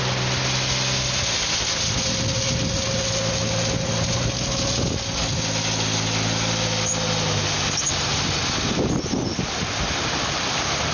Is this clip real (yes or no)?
yes